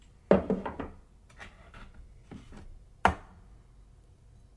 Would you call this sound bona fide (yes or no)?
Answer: yes